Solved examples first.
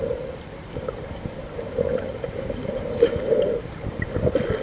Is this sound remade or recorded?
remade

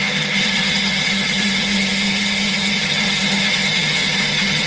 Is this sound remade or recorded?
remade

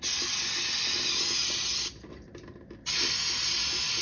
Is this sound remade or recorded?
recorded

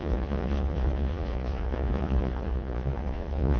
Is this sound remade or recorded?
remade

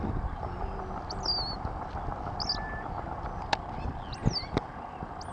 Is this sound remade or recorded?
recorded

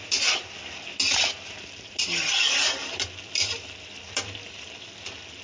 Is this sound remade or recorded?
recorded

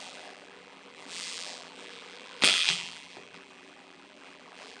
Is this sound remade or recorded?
remade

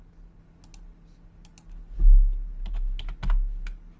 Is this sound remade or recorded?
recorded